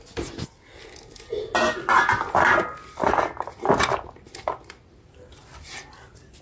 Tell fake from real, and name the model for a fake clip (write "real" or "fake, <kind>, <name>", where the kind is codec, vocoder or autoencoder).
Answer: real